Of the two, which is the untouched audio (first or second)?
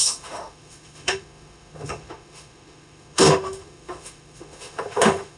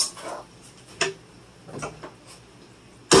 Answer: second